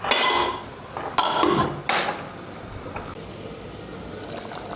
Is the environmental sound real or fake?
real